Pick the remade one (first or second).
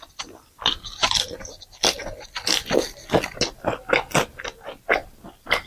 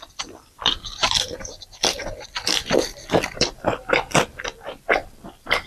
second